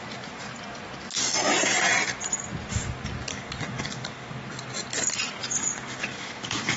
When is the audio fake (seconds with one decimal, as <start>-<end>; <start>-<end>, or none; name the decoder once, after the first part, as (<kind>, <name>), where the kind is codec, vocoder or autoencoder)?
3.3-4.4 (codec, DAC); 5.4-6.8